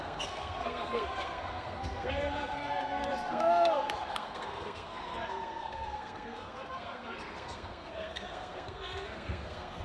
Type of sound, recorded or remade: remade